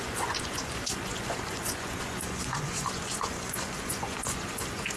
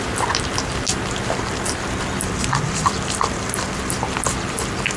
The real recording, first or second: second